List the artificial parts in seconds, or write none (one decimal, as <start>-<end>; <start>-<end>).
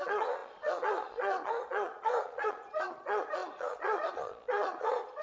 0.0-5.2